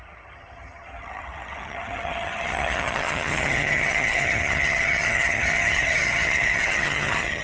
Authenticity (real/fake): fake